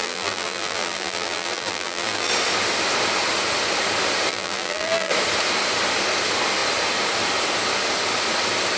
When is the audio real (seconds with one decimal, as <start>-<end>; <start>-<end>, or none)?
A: 2.3-4.3; 5.1-8.8